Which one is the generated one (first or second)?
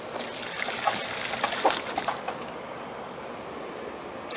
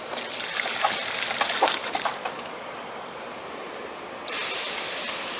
second